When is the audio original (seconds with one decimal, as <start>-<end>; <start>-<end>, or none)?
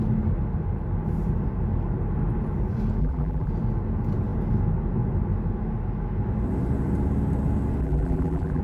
0.0-3.0; 3.5-7.8